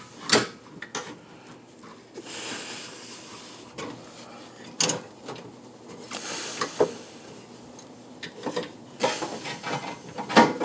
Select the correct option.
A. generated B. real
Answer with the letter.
B